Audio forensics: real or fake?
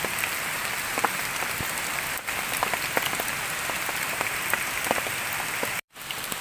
fake